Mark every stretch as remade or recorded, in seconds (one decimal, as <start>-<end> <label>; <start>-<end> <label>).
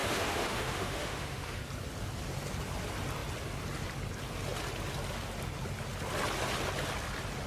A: 0.0-1.6 remade; 1.6-7.5 recorded